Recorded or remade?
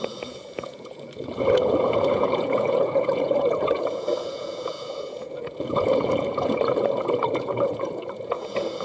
remade